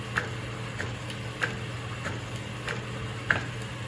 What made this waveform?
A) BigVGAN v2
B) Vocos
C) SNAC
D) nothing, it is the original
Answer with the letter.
D